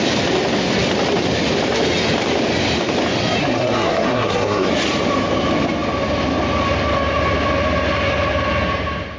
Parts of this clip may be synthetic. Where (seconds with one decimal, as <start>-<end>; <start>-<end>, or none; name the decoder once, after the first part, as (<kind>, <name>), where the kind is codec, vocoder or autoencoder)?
3.4-4.7 (codec, SNAC)